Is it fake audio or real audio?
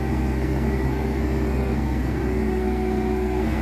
fake